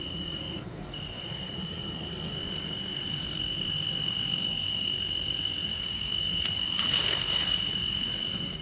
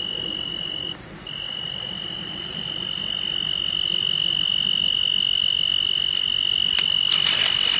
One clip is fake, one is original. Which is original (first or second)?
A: second